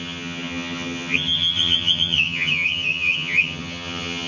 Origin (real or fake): fake